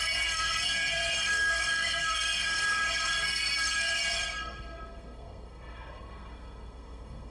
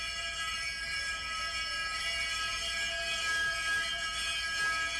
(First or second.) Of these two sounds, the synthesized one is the first